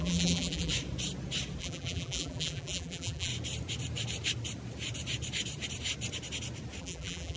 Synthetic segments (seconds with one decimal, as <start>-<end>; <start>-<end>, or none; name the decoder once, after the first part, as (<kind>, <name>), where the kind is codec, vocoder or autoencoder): 0.0-0.7 (vocoder, BigVGAN v2); 1.6-3.3; 6.8-7.4